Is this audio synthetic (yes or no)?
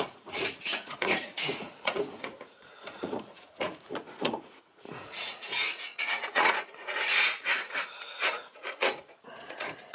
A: yes